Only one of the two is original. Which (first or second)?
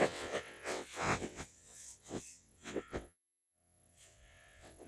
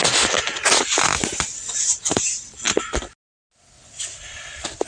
second